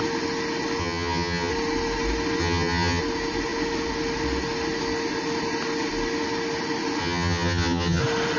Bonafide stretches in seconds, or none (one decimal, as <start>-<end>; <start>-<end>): 0.0-0.8; 1.5-2.4; 3.0-7.0; 8.0-8.4